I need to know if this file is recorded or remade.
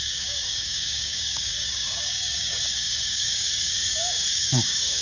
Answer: remade